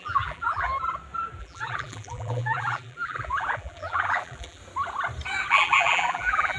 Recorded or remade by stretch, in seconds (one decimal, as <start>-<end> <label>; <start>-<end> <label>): 0.0-0.7 remade; 0.7-1.4 recorded; 1.4-4.6 remade; 4.6-5.5 recorded; 5.5-6.6 remade